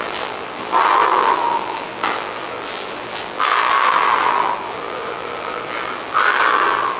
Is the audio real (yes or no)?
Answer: no